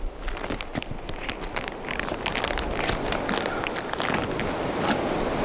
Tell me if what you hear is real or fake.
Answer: real